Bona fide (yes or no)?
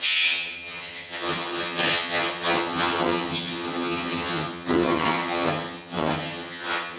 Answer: no